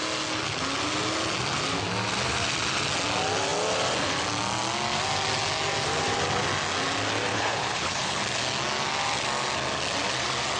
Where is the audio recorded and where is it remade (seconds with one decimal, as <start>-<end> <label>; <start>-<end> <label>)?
0.0-7.3 recorded; 7.3-8.2 remade; 8.2-10.6 recorded